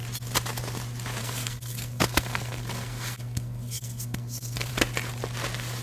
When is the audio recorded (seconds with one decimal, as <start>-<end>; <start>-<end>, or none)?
0.0-1.2; 4.7-5.8